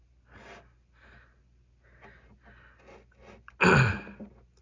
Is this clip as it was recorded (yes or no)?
yes